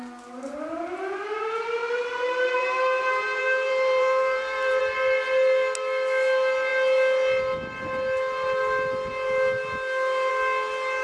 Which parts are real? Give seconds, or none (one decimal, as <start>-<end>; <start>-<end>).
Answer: 0.0-1.8; 4.8-11.0